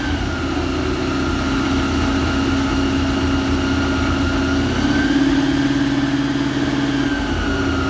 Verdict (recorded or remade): recorded